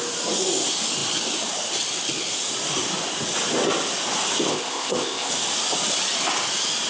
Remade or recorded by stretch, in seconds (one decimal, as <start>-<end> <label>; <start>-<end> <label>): 0.0-4.5 recorded; 4.5-5.3 remade; 5.3-6.9 recorded